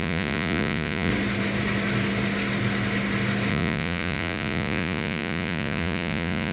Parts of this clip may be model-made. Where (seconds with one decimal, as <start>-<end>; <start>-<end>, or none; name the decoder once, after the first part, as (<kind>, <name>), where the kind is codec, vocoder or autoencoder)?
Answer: 0.0-1.1 (vocoder, Vocos); 3.5-6.5